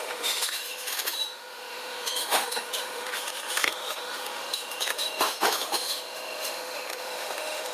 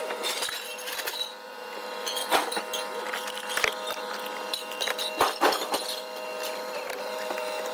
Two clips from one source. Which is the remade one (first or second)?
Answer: first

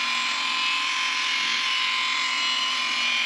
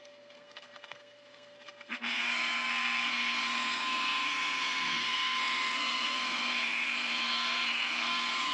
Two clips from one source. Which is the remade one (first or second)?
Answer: second